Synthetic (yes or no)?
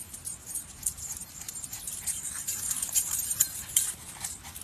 yes